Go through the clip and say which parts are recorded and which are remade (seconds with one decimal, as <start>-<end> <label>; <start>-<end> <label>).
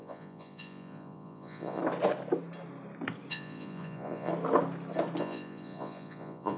0.0-1.8 remade; 1.8-3.3 recorded; 3.3-4.3 remade; 4.3-5.2 recorded; 5.2-6.6 remade